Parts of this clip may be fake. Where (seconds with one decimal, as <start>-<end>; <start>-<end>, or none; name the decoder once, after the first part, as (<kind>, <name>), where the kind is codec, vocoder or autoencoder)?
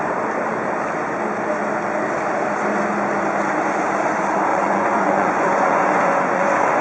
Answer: 4.5-6.8 (vocoder, Vocos)